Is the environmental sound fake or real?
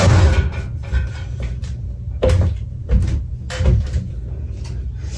real